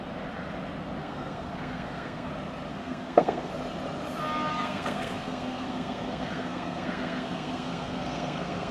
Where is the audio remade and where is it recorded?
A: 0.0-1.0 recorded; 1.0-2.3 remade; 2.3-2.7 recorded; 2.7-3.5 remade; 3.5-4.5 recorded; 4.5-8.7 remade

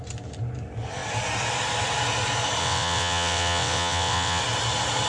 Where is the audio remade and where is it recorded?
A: 0.0-2.6 recorded; 2.6-4.4 remade; 4.4-5.1 recorded

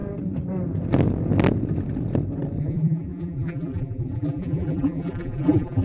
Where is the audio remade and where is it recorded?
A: 0.0-2.6 recorded; 2.6-5.8 remade

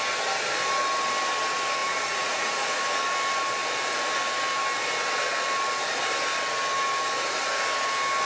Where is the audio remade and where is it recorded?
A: 0.0-1.8 recorded; 1.8-2.8 remade; 2.8-8.3 recorded